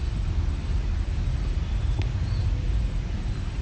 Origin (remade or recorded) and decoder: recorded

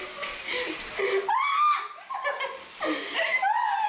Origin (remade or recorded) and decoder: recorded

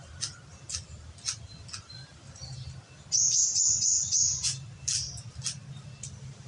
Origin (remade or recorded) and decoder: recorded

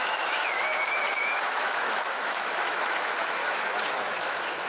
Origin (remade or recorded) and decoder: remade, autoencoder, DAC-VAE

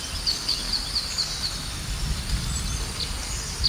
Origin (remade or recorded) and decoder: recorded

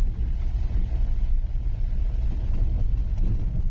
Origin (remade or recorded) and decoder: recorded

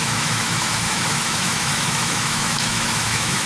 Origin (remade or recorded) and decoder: remade, autoencoder, DAC-VAE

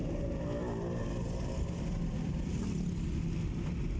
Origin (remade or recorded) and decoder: recorded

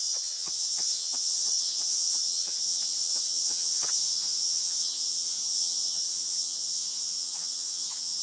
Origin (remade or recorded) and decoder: remade, vocoder, HiFi-GAN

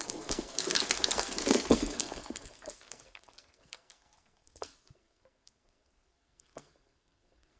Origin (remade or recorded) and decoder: remade, codec, SNAC